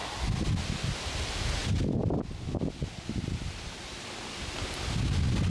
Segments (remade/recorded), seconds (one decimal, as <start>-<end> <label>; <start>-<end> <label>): 0.0-5.5 recorded